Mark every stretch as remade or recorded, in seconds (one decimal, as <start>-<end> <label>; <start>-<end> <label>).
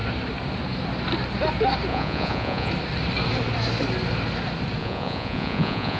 0.0-1.9 recorded; 1.9-2.7 remade; 2.7-4.8 recorded; 4.8-6.0 remade